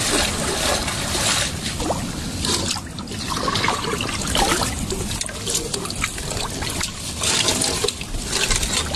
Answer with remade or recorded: recorded